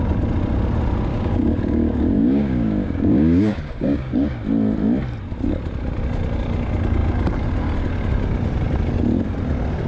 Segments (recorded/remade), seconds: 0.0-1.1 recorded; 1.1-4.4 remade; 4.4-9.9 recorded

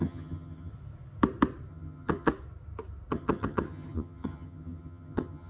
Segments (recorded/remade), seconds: 0.0-0.7 remade; 0.7-1.7 recorded; 1.7-2.3 remade; 2.3-3.1 recorded; 3.1-5.5 remade